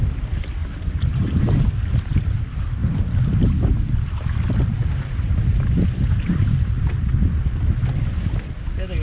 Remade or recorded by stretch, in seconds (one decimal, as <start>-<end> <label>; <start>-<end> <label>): 0.0-0.6 recorded; 0.6-1.7 remade; 1.7-9.0 recorded